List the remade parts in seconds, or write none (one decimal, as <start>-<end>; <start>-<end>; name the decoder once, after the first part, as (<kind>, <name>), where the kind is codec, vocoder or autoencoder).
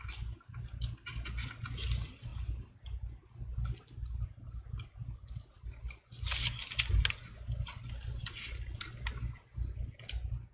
none